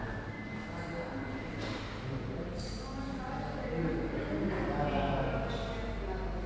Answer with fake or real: real